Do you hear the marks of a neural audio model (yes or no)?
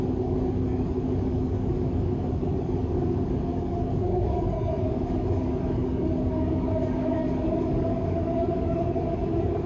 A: yes